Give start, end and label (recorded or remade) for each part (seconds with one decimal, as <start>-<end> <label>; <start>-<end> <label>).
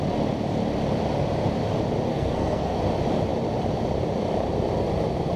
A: 0.0-2.1 recorded; 2.1-2.8 remade; 2.8-5.4 recorded